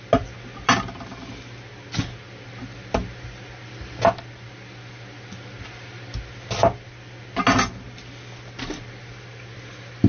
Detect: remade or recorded recorded